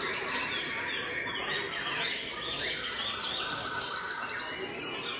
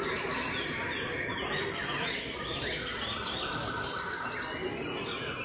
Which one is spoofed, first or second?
second